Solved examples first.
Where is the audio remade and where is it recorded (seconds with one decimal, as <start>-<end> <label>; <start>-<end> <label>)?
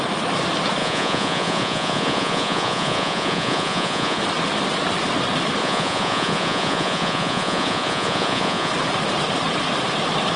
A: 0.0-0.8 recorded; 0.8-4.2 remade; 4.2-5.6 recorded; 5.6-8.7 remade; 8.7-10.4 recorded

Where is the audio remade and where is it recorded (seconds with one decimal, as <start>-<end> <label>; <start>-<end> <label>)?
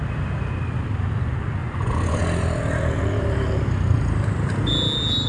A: 0.0-1.6 recorded; 1.6-2.2 remade; 2.2-5.3 recorded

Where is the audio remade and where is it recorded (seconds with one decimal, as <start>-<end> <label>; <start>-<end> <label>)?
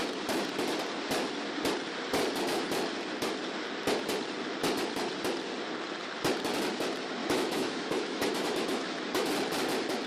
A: 0.0-7.2 recorded; 7.2-9.3 remade; 9.3-10.1 recorded